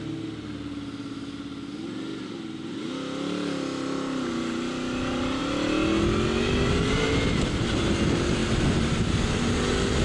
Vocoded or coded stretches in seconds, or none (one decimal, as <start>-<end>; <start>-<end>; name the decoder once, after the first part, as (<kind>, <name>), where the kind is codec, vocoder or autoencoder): 0.0-5.4 (vocoder, BigVGAN v2); 6.8-10.0